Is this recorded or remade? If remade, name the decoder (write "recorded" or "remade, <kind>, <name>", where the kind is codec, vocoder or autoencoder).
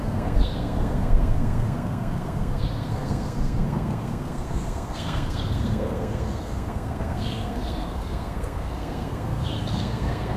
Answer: remade, codec, SNAC